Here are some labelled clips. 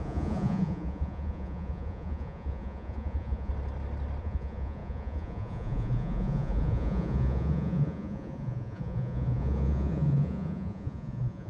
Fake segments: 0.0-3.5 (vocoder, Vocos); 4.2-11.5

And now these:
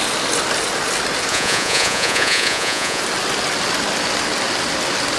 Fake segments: 1.3-3.0 (vocoder, Vocos)

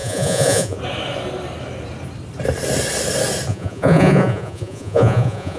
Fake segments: 0.0-0.8 (vocoder, Vocos); 3.5-5.6

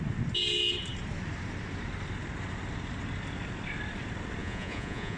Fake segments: 4.4-5.2 (vocoder, Vocos)